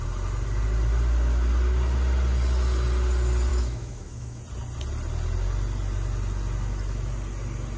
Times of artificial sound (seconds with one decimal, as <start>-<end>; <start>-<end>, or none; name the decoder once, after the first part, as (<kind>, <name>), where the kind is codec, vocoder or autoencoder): 3.5-4.4 (autoencoder, DAC-VAE)